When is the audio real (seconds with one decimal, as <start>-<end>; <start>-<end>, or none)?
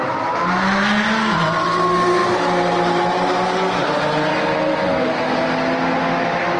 0.0-6.6